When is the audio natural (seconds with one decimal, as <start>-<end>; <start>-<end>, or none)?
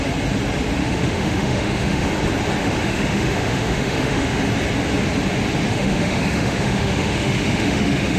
0.0-0.8; 2.1-2.6; 4.4-5.7